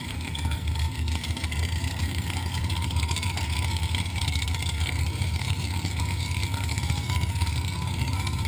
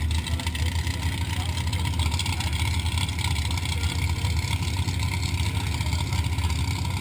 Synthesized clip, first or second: first